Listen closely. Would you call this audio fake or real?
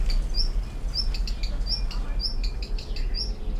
real